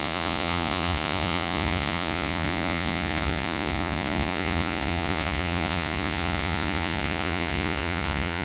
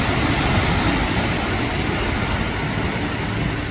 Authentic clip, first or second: second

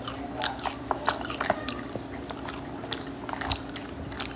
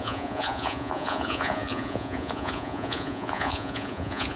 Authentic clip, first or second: first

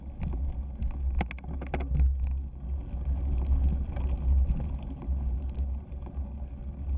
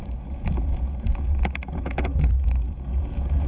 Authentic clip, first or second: first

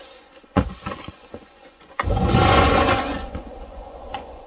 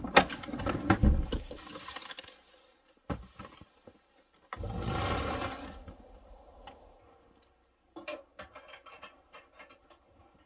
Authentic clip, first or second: second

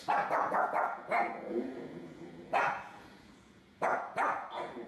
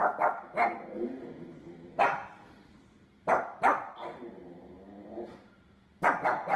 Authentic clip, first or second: second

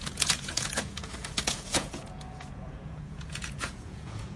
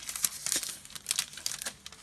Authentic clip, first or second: second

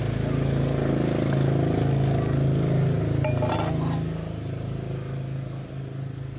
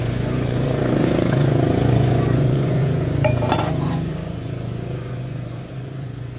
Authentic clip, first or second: first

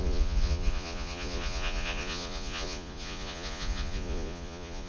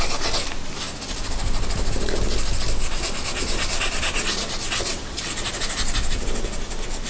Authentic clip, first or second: second